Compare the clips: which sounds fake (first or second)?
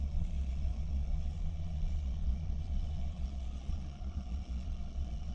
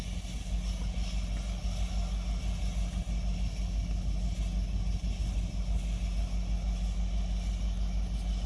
first